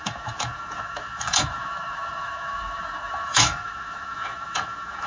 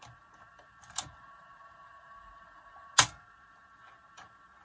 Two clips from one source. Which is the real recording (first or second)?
second